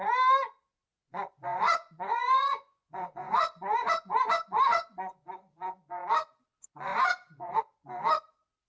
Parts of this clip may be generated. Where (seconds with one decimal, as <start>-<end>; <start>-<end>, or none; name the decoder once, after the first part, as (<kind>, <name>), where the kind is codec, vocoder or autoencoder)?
0.9-5.3 (vocoder, Vocos); 6.9-7.6